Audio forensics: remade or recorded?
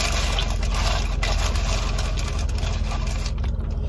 recorded